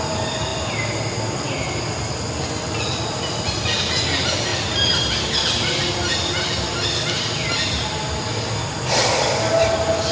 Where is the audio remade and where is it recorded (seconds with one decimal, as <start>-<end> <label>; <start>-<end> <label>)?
0.0-10.1 recorded